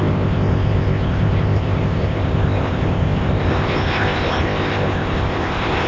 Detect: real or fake fake